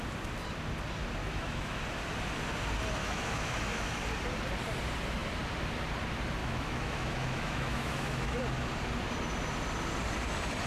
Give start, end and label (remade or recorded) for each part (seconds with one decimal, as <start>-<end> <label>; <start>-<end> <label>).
0.0-1.2 recorded; 1.2-1.8 remade; 1.8-3.0 recorded; 3.0-4.0 remade; 4.0-6.4 recorded; 6.4-8.4 remade; 8.4-10.7 recorded